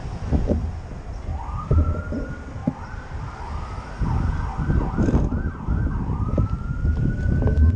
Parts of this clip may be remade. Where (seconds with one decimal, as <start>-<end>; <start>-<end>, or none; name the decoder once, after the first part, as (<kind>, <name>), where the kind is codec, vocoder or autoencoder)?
1.3-2.0 (vocoder, BigVGAN v2)